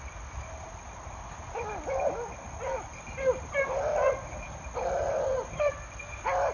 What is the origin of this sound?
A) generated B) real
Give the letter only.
B